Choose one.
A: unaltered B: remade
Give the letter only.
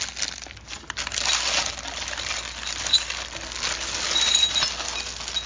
A